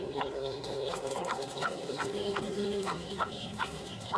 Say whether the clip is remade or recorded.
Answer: remade